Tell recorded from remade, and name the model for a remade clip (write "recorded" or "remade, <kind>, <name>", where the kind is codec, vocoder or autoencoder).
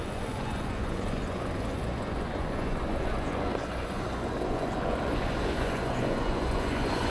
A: remade, vocoder, Vocos